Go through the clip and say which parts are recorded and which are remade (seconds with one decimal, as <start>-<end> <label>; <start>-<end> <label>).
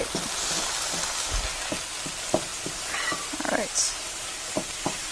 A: 0.0-2.5 recorded; 2.5-5.1 remade